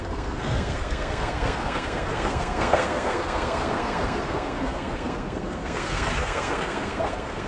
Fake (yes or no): yes